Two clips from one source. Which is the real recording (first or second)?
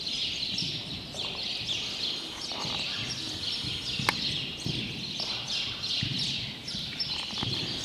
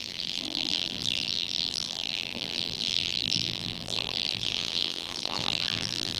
first